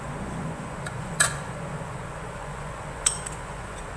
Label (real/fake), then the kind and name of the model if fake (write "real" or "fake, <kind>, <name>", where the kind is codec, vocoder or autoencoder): fake, vocoder, Vocos